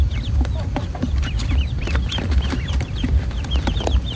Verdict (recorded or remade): remade